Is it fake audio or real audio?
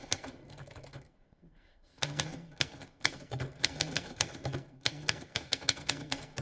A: fake